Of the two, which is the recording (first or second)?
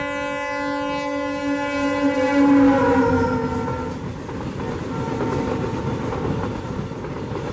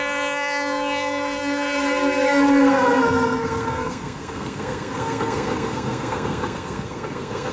first